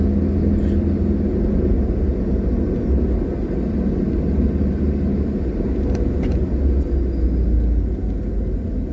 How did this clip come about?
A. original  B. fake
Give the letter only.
A